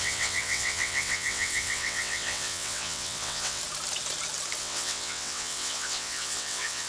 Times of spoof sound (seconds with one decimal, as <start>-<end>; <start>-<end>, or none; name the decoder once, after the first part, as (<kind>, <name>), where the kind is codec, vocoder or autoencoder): 0.0-3.6 (vocoder, WaveNeXt); 4.6-6.9